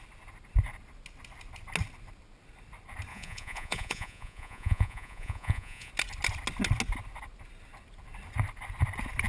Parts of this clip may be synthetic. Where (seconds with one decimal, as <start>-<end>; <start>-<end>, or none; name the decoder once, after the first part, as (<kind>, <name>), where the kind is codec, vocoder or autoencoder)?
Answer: 3.1-5.9 (vocoder, Vocos)